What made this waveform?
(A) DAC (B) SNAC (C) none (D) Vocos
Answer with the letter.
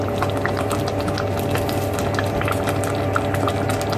C